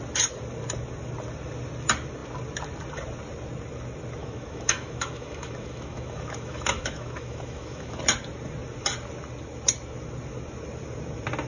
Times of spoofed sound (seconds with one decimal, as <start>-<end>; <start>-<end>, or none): 4.2-8.0